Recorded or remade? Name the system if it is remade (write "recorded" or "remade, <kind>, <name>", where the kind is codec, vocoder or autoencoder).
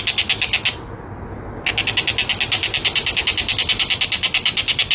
recorded